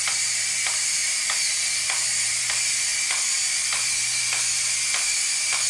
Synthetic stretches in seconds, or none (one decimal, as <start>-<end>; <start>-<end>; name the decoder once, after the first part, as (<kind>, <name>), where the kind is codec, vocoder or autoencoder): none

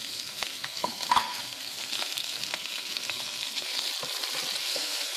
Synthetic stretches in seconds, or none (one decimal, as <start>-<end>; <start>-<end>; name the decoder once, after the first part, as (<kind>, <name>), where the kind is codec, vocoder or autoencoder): 0.0-3.9 (codec, SNAC); 4.6-5.2

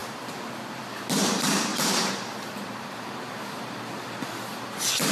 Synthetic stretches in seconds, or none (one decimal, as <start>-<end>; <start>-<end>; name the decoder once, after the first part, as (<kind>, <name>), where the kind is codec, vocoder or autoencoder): 1.7-5.1 (vocoder, BigVGAN v2)

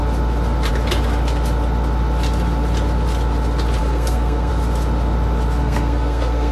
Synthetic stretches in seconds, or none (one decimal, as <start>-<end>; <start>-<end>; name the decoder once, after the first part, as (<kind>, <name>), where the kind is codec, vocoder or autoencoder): 3.8-4.5 (codec, SNAC); 5.6-6.5

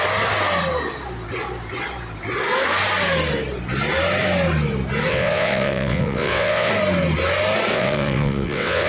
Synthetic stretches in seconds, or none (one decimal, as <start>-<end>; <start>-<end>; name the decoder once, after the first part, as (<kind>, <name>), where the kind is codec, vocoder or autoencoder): 5.1-6.7 (vocoder, WaveNeXt); 7.7-8.9

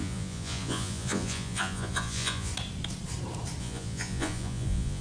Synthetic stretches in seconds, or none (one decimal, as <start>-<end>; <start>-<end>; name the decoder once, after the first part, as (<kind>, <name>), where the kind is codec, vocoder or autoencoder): 0.0-2.5 (vocoder, Vocos); 3.6-5.0